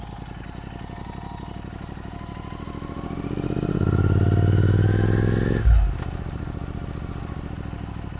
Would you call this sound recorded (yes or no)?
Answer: yes